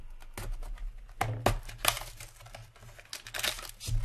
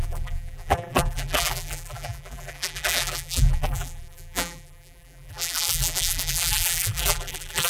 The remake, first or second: second